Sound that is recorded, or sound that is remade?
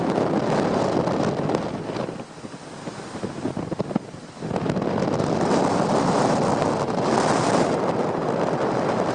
recorded